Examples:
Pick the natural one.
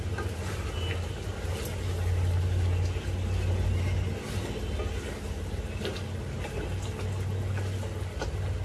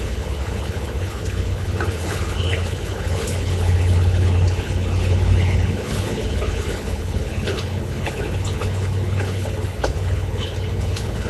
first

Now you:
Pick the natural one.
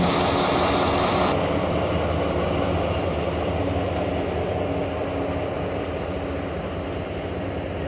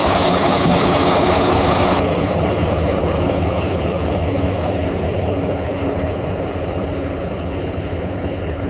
first